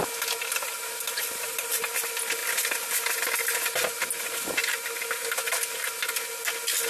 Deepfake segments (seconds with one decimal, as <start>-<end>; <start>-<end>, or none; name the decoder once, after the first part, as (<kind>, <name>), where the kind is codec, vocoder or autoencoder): 0.6-1.8 (vocoder, BigVGAN v2)